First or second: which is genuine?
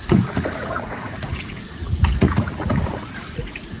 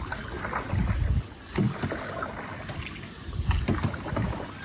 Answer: second